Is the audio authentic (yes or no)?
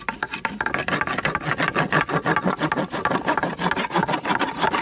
yes